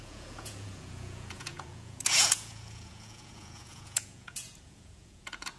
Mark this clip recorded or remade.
remade